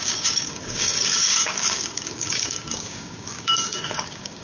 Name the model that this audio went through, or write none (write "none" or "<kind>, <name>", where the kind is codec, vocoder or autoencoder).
codec, DAC